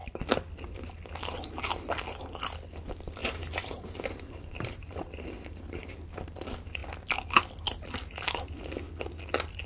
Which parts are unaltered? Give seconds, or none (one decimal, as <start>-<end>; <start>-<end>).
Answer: 0.0-3.2; 5.9-9.7